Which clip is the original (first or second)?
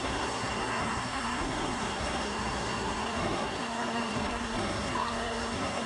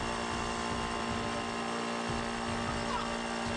second